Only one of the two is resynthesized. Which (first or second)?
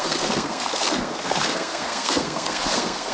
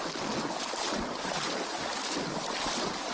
first